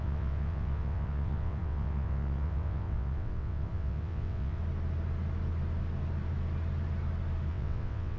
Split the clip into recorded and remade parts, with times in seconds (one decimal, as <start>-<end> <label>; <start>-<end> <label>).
0.0-4.6 remade; 4.6-7.5 recorded; 7.5-8.2 remade